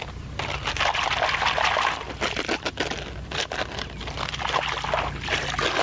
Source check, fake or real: real